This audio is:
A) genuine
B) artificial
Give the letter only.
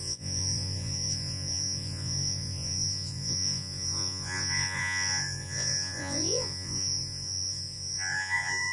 B